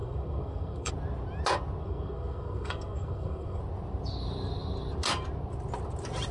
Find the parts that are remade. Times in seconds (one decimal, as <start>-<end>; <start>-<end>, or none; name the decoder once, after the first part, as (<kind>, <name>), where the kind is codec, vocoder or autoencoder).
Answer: 0.0-0.9 (codec, SNAC); 1.8-3.6